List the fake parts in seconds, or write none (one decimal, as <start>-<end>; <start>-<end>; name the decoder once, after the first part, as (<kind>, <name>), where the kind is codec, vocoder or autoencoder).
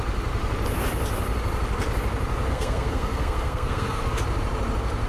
2.5-4.0 (codec, SNAC)